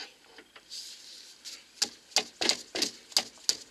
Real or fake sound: real